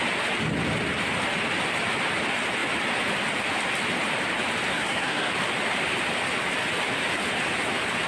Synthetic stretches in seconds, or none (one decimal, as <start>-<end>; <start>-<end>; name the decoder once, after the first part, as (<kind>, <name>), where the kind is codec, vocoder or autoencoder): 4.7-5.3 (codec, SNAC)